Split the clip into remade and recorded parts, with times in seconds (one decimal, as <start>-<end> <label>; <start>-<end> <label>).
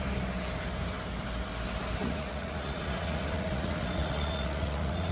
0.0-2.0 recorded; 2.0-5.1 remade